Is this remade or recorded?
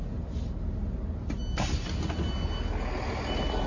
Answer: recorded